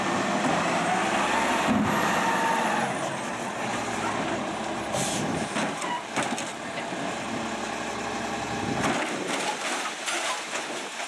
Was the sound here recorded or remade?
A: recorded